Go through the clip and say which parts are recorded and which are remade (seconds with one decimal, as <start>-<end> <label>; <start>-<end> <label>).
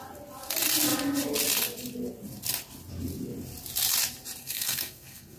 0.0-4.4 recorded; 4.4-5.4 remade